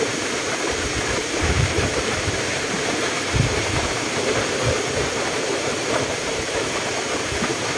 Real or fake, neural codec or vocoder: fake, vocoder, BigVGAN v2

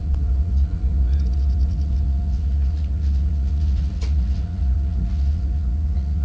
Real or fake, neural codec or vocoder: fake, vocoder, Vocos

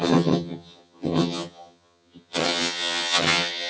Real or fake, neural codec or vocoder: fake, vocoder, HiFi-GAN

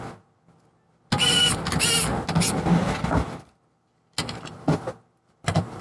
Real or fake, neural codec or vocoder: real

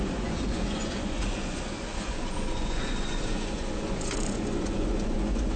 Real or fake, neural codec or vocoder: fake, vocoder, Vocos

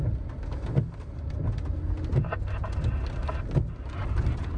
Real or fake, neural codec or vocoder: real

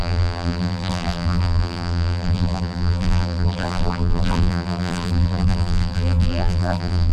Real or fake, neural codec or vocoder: fake, vocoder, BigVGAN v2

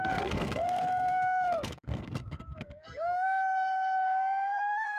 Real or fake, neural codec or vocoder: fake, codec, SNAC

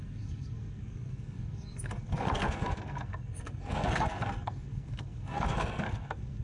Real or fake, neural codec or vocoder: fake, codec, SNAC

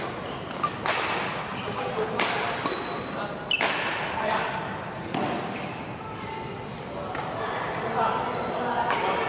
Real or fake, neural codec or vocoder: real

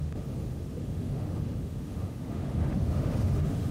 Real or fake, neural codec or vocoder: fake, autoencoder, DAC-VAE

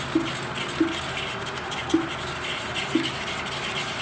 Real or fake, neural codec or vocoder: real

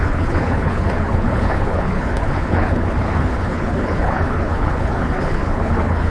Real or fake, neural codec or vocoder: fake, codec, HILCodec